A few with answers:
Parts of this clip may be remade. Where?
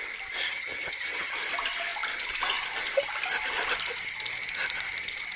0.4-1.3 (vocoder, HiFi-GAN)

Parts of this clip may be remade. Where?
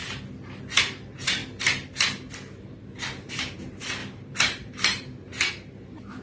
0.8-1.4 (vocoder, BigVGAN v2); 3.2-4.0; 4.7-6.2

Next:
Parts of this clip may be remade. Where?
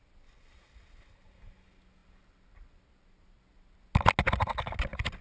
none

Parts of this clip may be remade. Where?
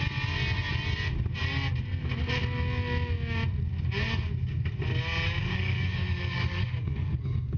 5.4-7.6 (codec, DAC)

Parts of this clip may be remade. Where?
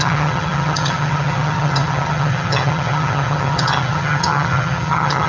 0.0-5.3 (vocoder, HiFi-GAN)